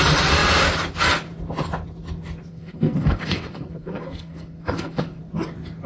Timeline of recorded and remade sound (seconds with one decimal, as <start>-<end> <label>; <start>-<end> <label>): 0.0-2.5 recorded; 2.5-5.2 remade; 5.2-5.9 recorded